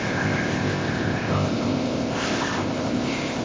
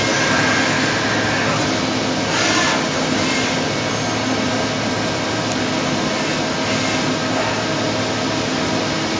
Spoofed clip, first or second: first